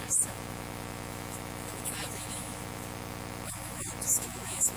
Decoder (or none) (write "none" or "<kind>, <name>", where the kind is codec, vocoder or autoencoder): autoencoder, DAC-VAE